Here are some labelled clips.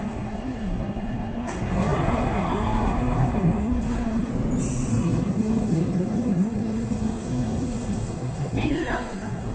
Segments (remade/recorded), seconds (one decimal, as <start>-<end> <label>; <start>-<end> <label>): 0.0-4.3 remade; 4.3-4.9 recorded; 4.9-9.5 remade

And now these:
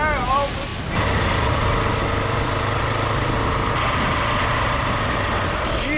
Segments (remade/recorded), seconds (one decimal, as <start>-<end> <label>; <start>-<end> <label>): 0.0-6.0 recorded

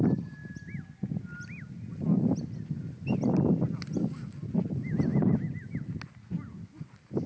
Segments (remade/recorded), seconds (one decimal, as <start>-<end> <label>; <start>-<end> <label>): 0.0-7.3 recorded

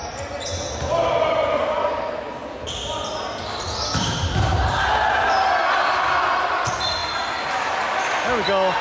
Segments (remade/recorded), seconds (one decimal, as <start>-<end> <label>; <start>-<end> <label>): 0.0-8.8 recorded